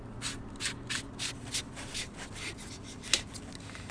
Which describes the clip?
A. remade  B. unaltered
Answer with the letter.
B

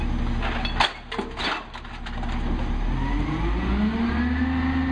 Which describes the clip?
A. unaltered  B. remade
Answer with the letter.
A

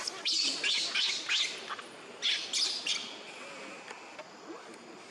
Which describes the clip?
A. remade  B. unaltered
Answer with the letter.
B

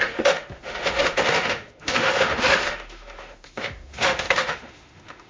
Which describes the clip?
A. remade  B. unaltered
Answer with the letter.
A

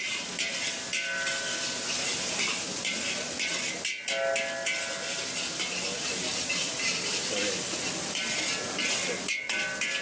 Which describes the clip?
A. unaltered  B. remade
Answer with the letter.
A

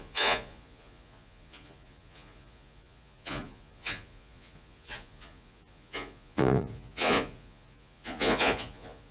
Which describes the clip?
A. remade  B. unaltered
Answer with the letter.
A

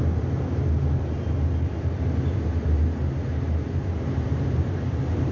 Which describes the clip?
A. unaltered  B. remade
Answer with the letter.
A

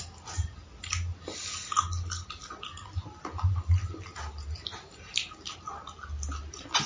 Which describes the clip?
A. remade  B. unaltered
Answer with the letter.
B